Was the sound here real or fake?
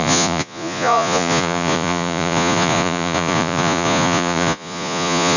fake